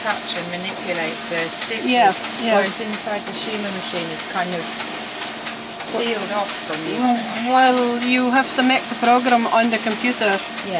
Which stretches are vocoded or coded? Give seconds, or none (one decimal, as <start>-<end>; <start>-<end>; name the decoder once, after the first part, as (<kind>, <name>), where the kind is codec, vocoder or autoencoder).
7.0-7.7 (codec, SNAC)